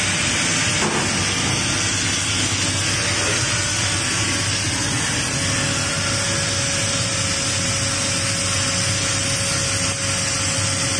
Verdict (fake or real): real